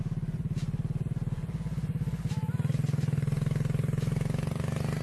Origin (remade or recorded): recorded